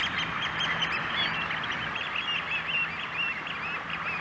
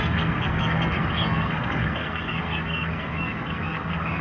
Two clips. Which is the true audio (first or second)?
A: first